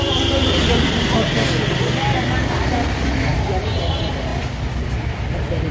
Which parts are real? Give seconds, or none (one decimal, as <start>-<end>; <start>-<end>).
0.0-5.7